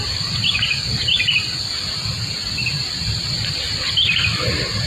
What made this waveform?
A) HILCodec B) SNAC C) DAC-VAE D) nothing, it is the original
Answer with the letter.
D